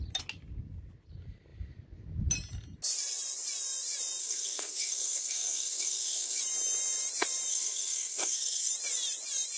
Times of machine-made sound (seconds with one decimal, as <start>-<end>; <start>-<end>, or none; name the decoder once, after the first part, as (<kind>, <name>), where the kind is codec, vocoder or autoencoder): 4.2-6.4 (codec, SNAC); 7.5-8.7